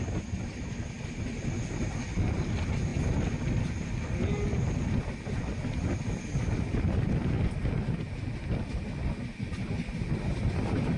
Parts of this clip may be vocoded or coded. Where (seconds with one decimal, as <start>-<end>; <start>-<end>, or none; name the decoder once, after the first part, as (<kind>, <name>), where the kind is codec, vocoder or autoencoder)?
none